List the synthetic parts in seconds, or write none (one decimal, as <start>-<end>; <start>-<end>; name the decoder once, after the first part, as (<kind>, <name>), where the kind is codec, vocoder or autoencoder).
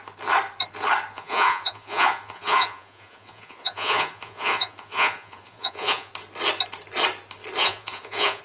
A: 1.1-6.1 (vocoder, Vocos); 7.6-8.4